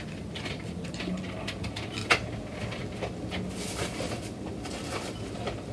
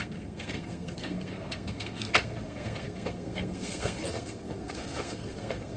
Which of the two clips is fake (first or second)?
second